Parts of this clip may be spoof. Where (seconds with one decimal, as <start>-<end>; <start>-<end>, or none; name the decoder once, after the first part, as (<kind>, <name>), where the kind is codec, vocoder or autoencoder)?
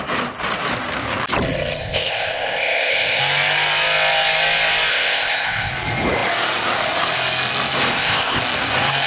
1.8-3.2 (codec, ZipCodec); 4.9-5.7; 7.9-8.4